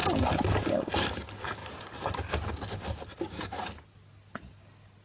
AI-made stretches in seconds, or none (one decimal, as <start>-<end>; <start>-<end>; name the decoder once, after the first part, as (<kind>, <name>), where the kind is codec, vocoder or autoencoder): none